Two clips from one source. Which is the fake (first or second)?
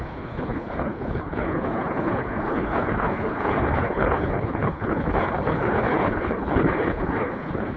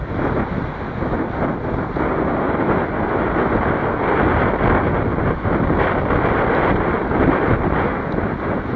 first